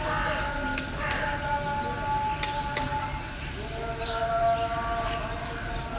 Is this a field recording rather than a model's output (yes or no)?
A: yes